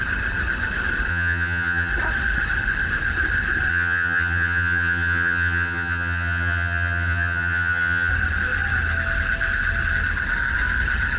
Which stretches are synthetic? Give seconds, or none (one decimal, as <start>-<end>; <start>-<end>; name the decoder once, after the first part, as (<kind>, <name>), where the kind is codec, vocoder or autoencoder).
1.1-1.9 (vocoder, HiFi-GAN); 3.7-8.1